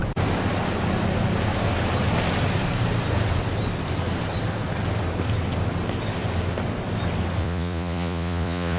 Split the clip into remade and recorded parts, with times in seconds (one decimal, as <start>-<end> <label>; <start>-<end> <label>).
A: 0.0-7.4 recorded; 7.4-8.8 remade